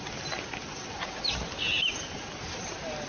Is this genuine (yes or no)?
yes